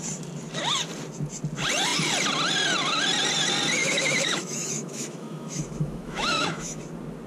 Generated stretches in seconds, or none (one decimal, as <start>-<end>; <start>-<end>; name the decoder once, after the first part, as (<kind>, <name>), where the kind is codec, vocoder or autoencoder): 3.8-6.8 (autoencoder, DAC-VAE)